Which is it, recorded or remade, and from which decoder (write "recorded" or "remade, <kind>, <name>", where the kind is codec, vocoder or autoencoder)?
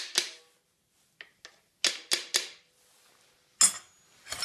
recorded